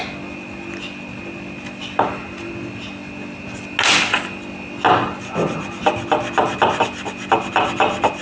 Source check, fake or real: real